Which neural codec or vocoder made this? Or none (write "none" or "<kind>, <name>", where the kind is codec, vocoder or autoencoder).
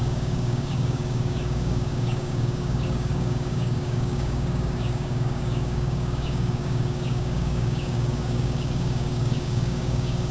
codec, DAC